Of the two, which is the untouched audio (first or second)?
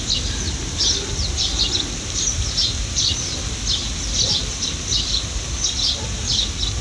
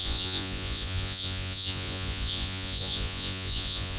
first